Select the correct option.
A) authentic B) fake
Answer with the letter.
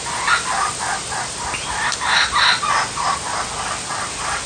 A